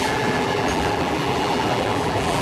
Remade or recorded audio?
remade